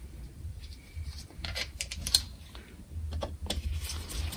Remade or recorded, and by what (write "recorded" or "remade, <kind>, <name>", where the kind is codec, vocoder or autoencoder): remade, vocoder, BigVGAN v2